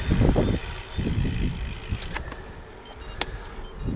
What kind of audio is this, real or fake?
real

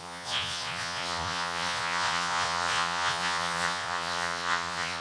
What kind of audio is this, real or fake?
fake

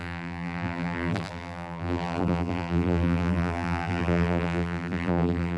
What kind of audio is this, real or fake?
fake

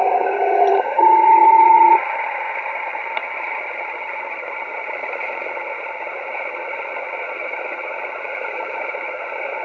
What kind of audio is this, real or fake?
fake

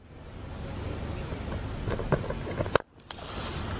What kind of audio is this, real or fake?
real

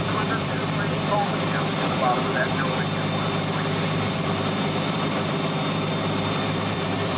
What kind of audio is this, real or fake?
fake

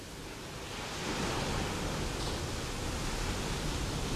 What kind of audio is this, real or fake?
real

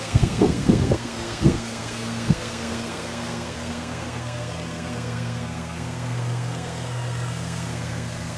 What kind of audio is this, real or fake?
fake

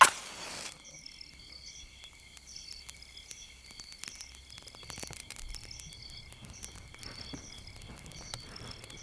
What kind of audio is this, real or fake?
real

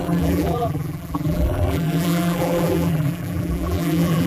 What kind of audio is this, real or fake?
fake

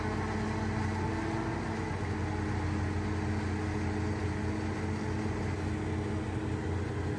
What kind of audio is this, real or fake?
real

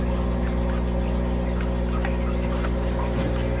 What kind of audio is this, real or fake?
real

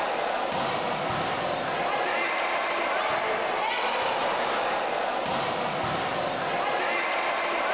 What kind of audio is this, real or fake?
real